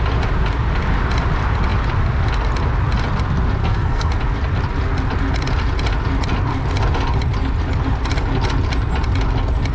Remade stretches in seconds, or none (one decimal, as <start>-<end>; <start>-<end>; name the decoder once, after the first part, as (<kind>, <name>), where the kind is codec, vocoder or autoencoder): 3.6-4.1 (codec, SNAC)